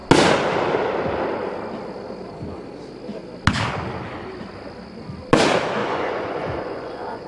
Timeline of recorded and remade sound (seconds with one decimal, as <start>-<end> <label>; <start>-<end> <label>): 0.0-5.8 recorded; 5.8-7.3 remade

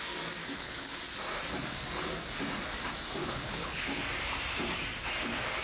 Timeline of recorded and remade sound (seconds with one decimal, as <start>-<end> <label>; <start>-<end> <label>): 0.0-0.4 recorded; 0.4-1.0 remade; 1.0-3.2 recorded; 3.2-4.0 remade; 4.0-5.6 recorded

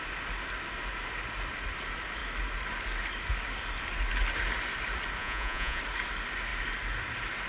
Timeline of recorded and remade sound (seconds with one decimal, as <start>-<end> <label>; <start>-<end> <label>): 0.0-5.2 recorded; 5.2-5.8 remade; 5.8-7.5 recorded

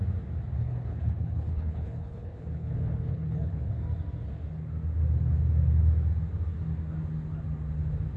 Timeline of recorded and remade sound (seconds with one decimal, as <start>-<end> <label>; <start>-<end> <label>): 0.0-0.6 recorded; 0.6-3.7 remade; 3.7-8.2 recorded